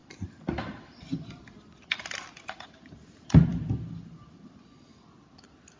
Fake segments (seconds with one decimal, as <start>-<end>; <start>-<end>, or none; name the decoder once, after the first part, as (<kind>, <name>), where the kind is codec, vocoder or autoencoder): none